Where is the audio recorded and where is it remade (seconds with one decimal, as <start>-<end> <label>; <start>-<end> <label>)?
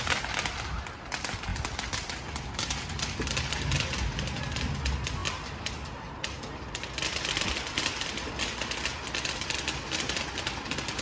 0.0-11.0 recorded